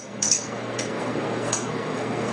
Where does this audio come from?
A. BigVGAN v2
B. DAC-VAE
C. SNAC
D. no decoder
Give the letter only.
C